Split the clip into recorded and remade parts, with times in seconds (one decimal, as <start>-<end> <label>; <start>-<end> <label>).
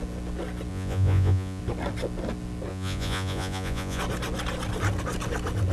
0.0-0.7 recorded; 0.7-1.6 remade; 1.6-2.7 recorded; 2.7-4.0 remade; 4.0-5.7 recorded